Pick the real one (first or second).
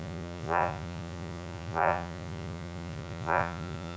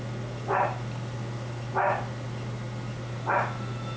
second